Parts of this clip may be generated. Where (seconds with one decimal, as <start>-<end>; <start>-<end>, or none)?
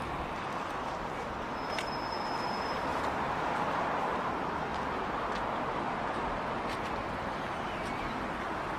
2.9-3.9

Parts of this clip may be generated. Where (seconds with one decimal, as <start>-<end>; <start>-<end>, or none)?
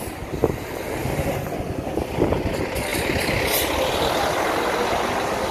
1.0-2.4; 2.9-4.2